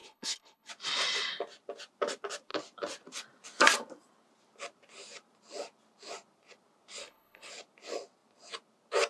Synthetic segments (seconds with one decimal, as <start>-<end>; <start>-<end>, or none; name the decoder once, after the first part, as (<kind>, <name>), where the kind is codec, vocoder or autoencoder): 0.0-0.7 (codec, HILCodec); 7.0-7.5